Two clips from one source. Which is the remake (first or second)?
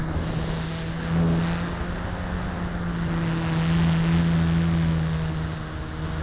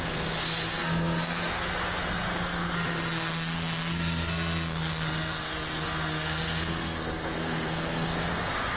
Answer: second